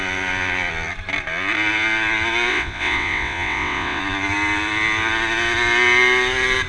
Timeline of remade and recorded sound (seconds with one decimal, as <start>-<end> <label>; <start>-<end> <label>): 0.0-2.5 recorded; 2.5-4.0 remade; 4.0-6.7 recorded